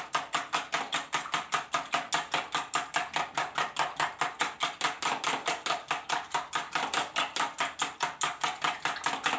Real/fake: real